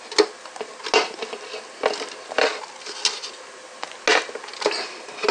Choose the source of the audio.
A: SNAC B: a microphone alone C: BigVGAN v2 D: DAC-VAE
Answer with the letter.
B